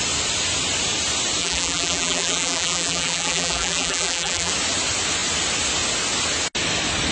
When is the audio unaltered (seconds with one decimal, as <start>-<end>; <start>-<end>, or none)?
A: 0.0-1.4; 4.5-7.1